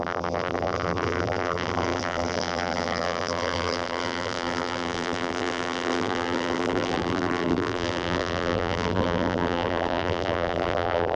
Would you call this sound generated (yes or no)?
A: yes